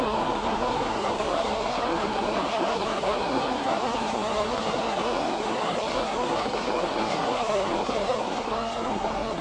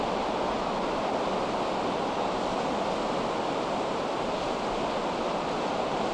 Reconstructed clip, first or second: first